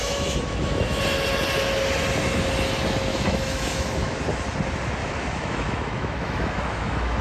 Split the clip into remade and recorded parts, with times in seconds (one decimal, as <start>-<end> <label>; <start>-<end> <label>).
0.0-1.0 remade; 1.0-3.1 recorded; 3.1-4.2 remade; 4.2-5.0 recorded; 5.0-7.2 remade